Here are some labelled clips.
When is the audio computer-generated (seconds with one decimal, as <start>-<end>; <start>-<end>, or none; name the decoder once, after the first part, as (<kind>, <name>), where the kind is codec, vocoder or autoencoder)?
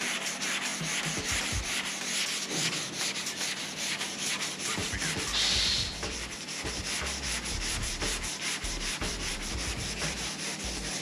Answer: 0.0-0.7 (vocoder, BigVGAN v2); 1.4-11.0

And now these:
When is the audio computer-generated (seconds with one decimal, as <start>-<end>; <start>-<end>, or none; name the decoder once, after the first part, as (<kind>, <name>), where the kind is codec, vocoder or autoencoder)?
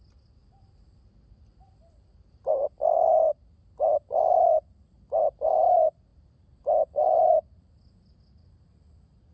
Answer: 0.4-2.5 (vocoder, BigVGAN v2); 6.1-7.3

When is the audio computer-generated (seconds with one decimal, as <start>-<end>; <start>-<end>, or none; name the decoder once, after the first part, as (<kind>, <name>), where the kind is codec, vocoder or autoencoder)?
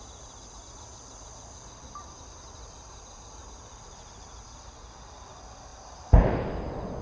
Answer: 0.9-5.1 (vocoder, BigVGAN v2); 5.7-6.3